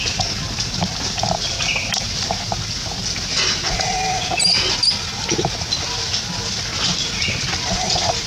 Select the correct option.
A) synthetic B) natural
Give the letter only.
B